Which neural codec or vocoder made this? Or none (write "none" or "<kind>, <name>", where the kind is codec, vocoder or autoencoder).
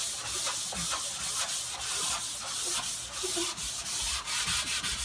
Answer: none